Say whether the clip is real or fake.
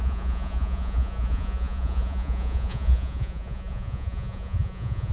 fake